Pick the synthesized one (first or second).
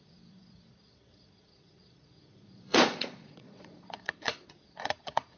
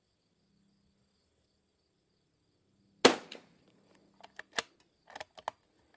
first